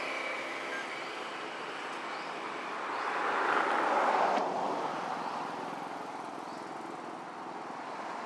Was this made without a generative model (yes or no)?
yes